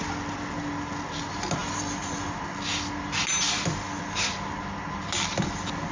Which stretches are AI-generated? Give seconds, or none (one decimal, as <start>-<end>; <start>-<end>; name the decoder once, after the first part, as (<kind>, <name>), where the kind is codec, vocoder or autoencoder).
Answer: none